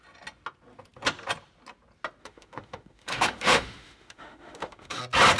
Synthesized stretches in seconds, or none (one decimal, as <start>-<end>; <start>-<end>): 2.2-5.0